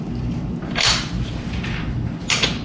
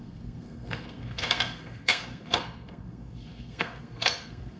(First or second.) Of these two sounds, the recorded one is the first